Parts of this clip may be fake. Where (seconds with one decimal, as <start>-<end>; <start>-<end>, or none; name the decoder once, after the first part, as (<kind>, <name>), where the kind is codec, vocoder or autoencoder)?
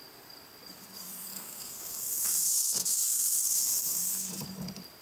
1.3-4.3 (codec, SNAC)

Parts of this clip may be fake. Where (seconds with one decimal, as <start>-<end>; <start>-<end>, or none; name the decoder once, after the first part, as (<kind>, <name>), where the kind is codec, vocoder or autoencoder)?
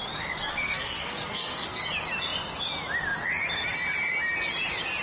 0.5-1.8 (codec, SNAC)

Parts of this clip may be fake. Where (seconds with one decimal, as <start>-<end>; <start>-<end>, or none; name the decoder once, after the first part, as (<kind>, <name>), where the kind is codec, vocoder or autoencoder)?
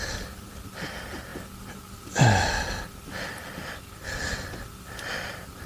none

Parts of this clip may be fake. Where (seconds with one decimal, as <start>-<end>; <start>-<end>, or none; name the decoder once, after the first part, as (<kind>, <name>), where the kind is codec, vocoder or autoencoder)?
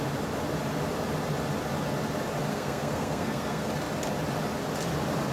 2.5-3.7 (codec, SNAC)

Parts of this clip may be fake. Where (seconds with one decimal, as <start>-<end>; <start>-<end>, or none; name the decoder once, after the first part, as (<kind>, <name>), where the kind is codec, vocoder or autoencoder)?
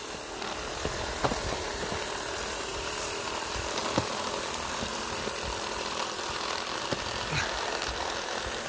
none